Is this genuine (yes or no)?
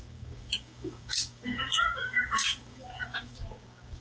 no